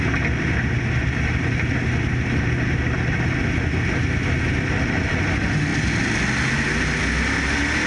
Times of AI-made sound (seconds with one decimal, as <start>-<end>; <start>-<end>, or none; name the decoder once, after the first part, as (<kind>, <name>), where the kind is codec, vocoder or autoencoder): none